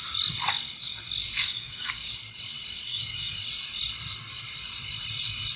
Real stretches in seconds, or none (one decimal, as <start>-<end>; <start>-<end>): 0.0-1.2; 2.1-2.9; 3.4-5.6